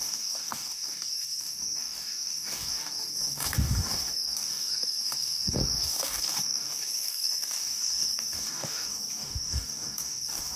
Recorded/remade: remade